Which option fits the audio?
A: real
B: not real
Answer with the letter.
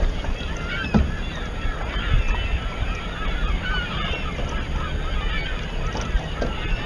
A